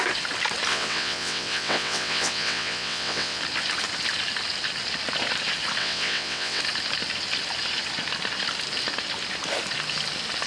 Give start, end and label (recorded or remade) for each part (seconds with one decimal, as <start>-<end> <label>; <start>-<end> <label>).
0.0-0.7 recorded; 0.7-3.4 remade; 3.4-5.8 recorded; 5.8-6.6 remade; 6.6-10.5 recorded